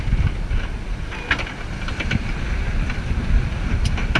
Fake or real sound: real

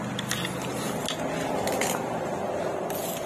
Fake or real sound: real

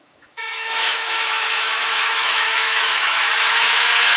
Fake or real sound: fake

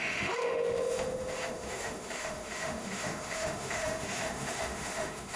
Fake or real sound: fake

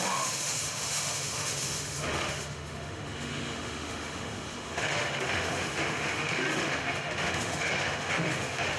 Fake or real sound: fake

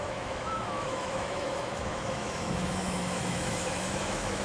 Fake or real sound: fake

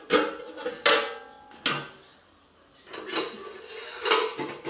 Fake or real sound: real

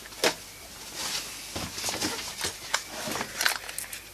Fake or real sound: real